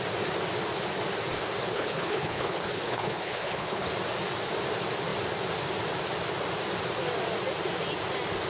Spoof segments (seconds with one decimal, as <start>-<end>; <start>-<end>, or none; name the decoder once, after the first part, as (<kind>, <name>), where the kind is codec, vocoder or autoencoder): 1.7-3.9 (codec, HILCodec)